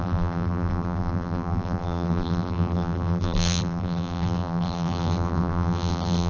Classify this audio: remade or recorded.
remade